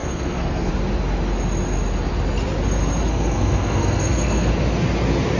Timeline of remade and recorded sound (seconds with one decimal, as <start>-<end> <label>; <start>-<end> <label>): 0.0-0.7 remade; 0.7-3.1 recorded; 3.1-4.5 remade; 4.5-5.4 recorded